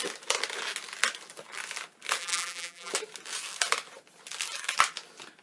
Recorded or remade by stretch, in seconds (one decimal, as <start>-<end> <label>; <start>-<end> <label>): 0.0-2.2 recorded; 2.2-2.9 remade; 2.9-5.4 recorded